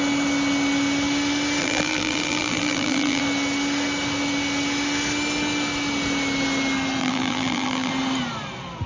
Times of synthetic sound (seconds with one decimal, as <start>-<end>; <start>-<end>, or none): 1.6-3.2; 7.0-7.9